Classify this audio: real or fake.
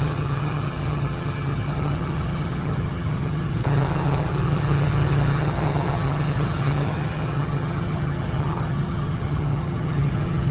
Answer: fake